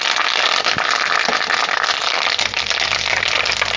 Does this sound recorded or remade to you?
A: recorded